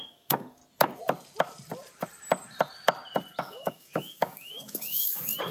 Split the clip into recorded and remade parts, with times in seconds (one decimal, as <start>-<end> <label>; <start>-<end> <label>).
0.0-0.6 remade; 0.6-3.4 recorded; 3.4-5.5 remade